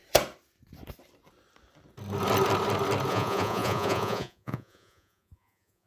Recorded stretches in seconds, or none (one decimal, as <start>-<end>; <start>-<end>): 0.0-3.1